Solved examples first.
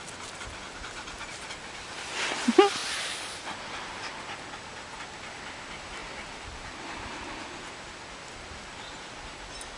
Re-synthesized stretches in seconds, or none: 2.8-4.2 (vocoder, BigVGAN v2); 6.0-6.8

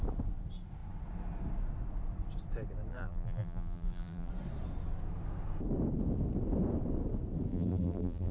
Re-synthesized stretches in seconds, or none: 2.9-4.3 (vocoder, BigVGAN v2); 7.5-8.3

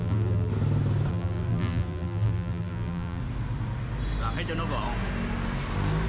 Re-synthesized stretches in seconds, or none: 0.0-0.5 (vocoder, BigVGAN v2); 1.1-3.2

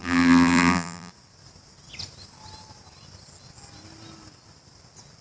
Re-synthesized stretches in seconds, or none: 0.0-1.1 (vocoder, BigVGAN v2)

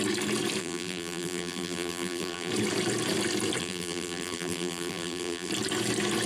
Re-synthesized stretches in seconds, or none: 0.6-2.5 (vocoder, BigVGAN v2); 3.6-5.5

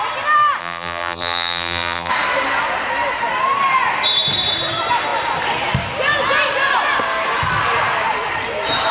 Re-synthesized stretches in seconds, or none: 0.6-2.1 (vocoder, BigVGAN v2)